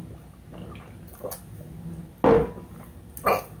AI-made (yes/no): no